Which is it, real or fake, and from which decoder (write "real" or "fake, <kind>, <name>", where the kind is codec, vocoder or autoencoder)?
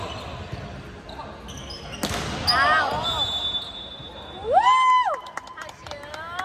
real